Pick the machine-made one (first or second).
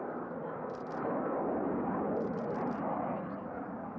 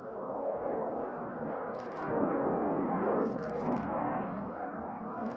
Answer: second